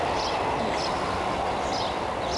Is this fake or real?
real